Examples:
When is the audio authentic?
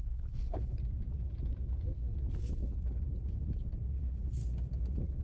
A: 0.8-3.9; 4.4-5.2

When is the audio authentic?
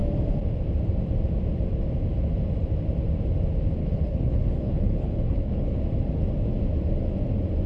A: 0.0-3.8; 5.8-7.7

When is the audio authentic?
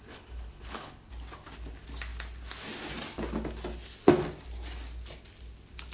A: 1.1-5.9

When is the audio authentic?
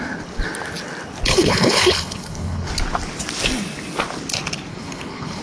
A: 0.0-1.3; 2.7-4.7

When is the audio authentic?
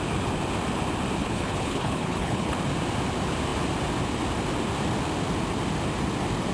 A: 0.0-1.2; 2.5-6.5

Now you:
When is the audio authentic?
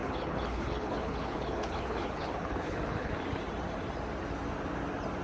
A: 3.1-5.2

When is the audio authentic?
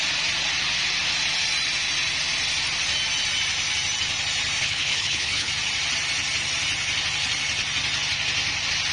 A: 0.0-4.6; 5.5-8.9